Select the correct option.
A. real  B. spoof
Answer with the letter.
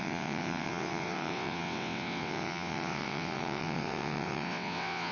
B